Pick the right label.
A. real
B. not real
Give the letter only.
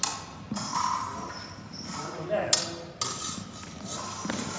A